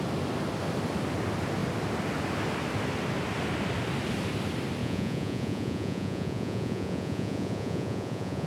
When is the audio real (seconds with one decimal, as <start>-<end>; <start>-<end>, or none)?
0.0-4.8